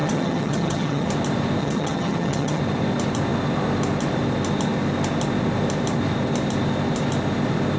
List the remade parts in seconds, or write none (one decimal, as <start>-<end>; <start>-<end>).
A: 0.0-1.1; 1.6-2.6

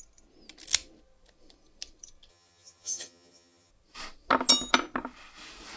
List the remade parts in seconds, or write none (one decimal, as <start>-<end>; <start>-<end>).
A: 2.3-3.7

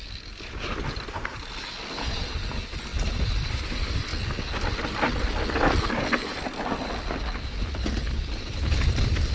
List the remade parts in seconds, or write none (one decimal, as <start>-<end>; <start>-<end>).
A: 0.0-4.1; 5.9-9.3

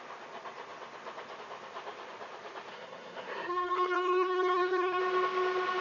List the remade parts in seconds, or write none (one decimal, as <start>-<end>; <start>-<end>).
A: 2.7-5.0

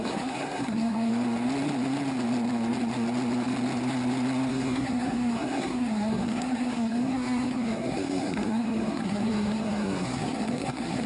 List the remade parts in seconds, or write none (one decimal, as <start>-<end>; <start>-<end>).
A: 0.0-1.1; 4.5-11.1

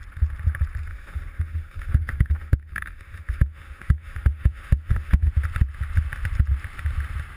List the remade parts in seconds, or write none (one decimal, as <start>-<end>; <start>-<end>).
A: 0.9-5.3